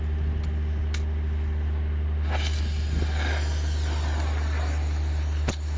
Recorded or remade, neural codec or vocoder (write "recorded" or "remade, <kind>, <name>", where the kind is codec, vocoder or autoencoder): recorded